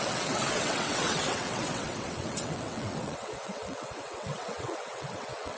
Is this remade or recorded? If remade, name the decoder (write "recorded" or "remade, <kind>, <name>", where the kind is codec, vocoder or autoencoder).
remade, vocoder, WaveNeXt